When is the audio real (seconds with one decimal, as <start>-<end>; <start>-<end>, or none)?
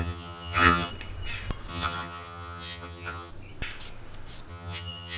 0.9-1.7; 3.3-4.5